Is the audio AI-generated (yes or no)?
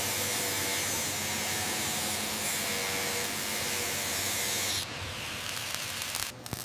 no